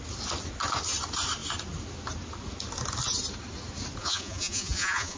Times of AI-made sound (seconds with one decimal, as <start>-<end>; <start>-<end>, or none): 4.0-5.2